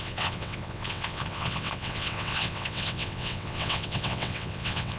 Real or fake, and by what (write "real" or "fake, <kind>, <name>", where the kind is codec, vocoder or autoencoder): fake, vocoder, WaveNeXt